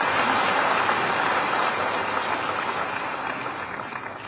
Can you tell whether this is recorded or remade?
recorded